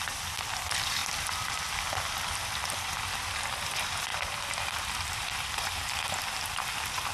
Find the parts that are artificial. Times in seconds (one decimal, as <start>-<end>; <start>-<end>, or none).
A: 0.0-1.0; 3.1-7.1